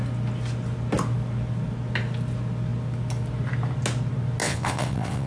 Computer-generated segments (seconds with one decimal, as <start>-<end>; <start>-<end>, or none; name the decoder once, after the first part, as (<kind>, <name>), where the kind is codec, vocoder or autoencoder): 4.4-5.3 (vocoder, WaveNeXt)